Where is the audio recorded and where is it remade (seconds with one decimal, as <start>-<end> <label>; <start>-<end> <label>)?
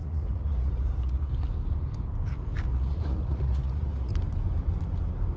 0.0-1.3 remade; 1.3-2.7 recorded; 2.7-4.1 remade; 4.1-5.4 recorded